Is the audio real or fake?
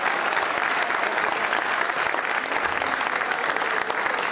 real